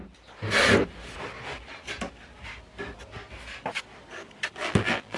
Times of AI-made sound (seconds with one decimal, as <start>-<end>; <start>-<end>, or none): 4.6-5.2